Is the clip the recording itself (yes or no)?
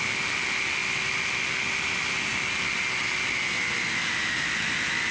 yes